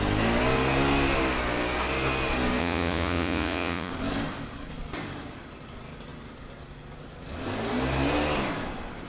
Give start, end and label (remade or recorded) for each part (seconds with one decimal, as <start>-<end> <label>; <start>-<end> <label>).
0.0-2.6 recorded; 2.6-3.9 remade; 3.9-9.1 recorded